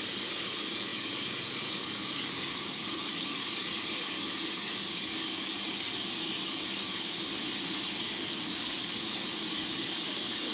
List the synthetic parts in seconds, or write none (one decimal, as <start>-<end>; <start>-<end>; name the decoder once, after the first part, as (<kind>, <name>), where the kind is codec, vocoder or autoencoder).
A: 0.0-7.3 (codec, DAC); 8.0-10.5